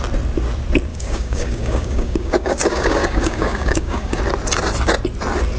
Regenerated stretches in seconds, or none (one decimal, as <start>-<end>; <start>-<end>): 0.9-4.2